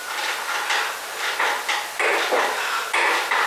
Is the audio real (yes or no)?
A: yes